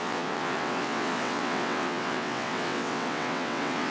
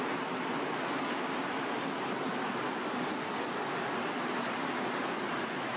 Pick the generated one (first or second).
first